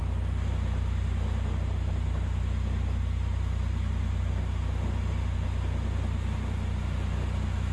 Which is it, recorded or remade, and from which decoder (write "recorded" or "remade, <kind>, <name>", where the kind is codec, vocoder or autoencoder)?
recorded